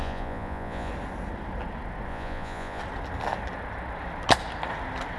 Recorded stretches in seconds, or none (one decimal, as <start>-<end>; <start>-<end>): 0.9-2.1; 2.8-5.2